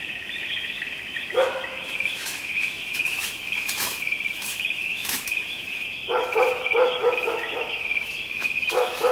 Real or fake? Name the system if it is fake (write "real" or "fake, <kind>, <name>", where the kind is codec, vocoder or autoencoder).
fake, autoencoder, DAC-VAE